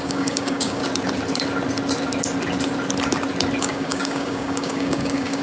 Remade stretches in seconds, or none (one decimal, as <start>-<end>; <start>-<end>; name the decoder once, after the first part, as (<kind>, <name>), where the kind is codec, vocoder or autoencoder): 0.0-0.8 (codec, DAC); 3.6-5.4